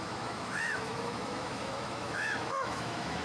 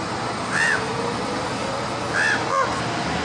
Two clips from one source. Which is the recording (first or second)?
second